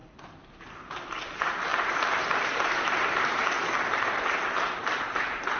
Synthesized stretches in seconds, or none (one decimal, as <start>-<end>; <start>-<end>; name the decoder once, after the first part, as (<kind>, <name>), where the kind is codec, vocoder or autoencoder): 1.2-3.4 (vocoder, BigVGAN v2); 4.7-5.6